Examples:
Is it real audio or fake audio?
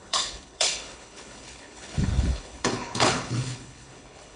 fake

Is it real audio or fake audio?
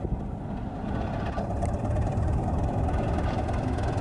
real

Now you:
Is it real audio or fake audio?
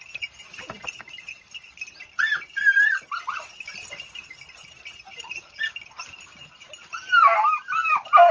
real